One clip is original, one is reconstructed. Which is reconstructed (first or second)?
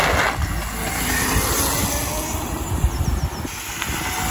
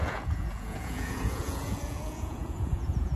second